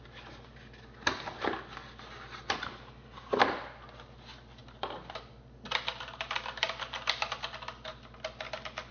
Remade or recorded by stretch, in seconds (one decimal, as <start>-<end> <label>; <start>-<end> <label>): 0.0-8.9 recorded